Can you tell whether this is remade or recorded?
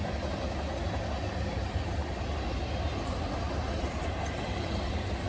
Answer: recorded